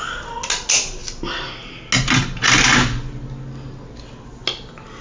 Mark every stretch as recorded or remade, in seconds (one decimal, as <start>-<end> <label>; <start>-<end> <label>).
0.0-5.0 recorded